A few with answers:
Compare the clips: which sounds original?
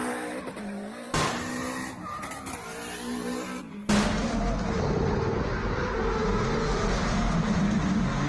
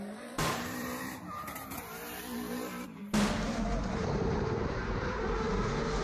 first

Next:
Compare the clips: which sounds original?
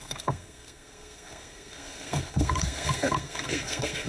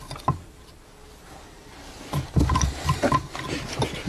second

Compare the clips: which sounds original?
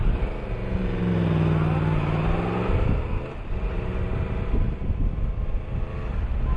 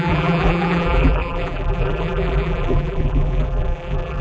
first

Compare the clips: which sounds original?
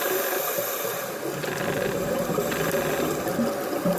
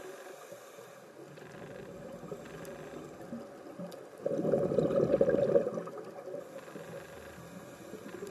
second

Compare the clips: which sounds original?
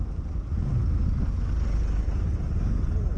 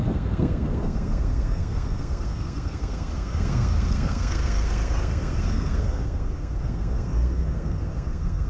first